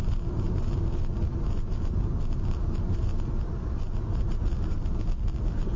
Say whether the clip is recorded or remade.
recorded